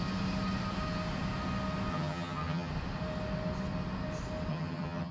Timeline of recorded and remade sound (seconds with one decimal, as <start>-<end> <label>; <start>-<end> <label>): 0.0-1.9 recorded; 1.9-2.7 remade; 2.7-4.5 recorded; 4.5-5.1 remade